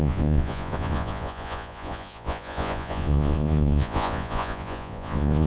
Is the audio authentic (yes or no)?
no